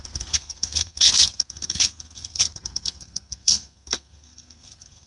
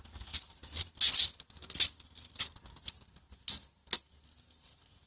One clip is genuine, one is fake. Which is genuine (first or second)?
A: second